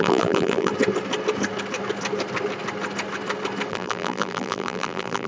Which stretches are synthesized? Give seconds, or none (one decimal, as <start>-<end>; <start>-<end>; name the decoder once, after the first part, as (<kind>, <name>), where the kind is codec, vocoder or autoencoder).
0.0-0.7 (vocoder, BigVGAN v2); 3.7-5.3